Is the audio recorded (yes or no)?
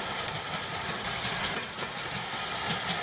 yes